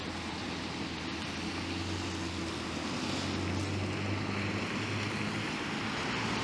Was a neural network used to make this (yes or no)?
no